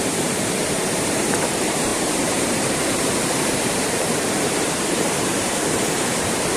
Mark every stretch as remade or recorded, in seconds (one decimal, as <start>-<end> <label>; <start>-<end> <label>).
0.0-6.6 remade